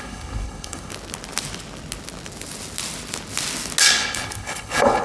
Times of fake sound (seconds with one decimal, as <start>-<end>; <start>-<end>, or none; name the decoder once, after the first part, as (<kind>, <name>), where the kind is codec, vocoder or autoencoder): 0.0-0.9 (codec, HILCodec); 3.8-5.0